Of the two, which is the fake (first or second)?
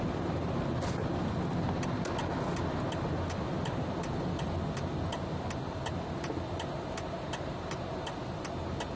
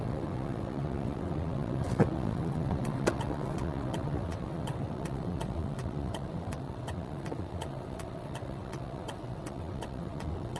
second